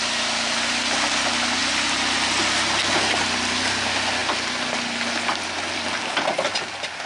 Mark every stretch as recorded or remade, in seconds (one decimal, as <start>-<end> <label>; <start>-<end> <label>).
0.0-7.1 recorded